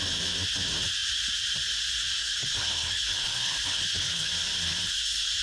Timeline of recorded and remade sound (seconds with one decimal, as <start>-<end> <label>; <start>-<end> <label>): 0.0-2.2 recorded; 2.2-4.3 remade; 4.3-4.7 recorded; 4.7-5.4 remade